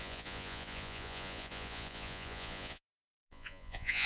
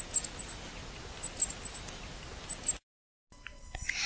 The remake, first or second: first